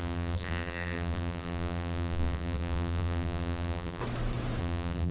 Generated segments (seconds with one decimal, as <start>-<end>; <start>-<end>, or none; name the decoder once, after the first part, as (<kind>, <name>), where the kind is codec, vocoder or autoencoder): 0.0-4.0 (vocoder, BigVGAN v2); 4.6-5.1